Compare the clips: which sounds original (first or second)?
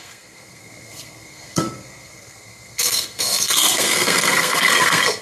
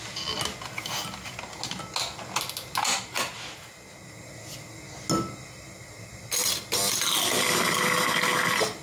second